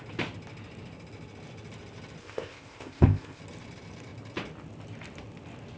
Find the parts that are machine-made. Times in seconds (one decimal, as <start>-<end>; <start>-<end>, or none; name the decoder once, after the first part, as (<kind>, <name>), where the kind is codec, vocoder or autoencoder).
2.2-3.4 (codec, ZipCodec)